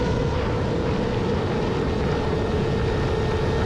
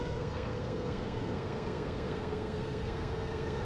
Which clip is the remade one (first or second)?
second